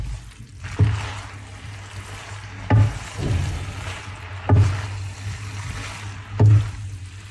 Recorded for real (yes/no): yes